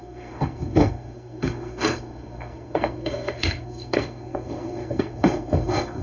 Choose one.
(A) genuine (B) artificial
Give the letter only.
B